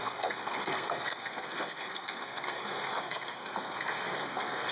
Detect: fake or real fake